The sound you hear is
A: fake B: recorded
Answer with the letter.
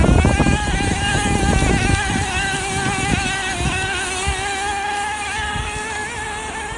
B